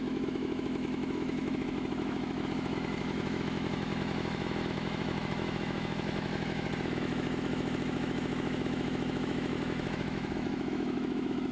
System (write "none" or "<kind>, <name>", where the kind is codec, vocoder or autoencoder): autoencoder, DAC-VAE